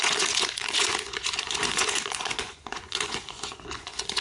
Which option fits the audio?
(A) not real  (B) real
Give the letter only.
A